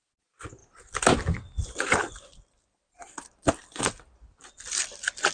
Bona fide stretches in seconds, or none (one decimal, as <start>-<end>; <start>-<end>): 0.0-5.3